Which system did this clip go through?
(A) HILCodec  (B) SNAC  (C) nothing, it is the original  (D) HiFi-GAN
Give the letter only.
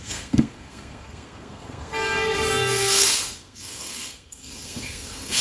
B